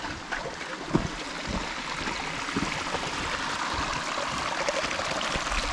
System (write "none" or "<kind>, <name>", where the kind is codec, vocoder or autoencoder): none